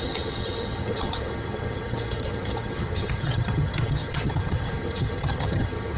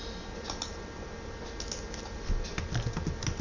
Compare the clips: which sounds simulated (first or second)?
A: first